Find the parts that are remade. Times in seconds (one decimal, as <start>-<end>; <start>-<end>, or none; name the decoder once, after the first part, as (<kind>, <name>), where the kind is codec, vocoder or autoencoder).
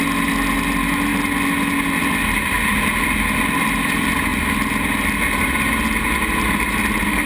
none